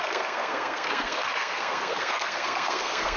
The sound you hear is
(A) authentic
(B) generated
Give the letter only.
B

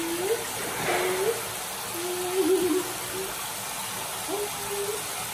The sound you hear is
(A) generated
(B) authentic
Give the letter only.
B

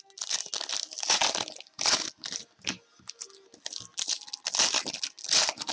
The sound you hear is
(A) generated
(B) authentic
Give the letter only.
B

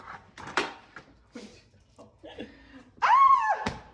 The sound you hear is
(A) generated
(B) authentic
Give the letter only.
B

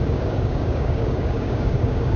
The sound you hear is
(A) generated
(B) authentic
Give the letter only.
A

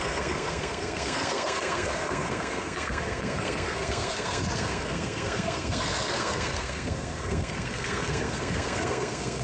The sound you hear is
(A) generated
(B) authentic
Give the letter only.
A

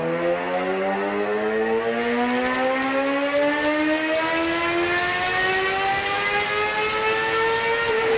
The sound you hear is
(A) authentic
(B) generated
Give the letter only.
A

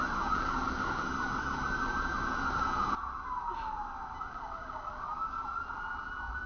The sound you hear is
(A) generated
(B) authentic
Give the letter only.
B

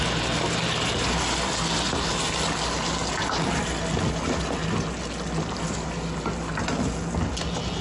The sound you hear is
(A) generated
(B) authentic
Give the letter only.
B